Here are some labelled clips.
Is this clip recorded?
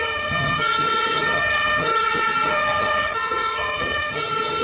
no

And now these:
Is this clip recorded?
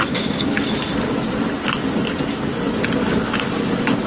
yes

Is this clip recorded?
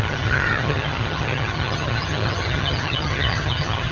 no